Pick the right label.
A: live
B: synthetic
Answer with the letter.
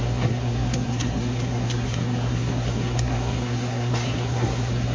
B